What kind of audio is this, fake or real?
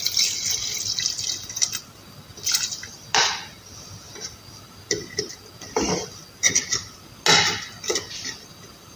real